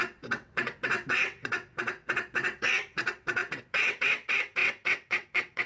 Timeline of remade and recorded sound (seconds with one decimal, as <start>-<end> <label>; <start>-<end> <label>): 0.0-5.7 remade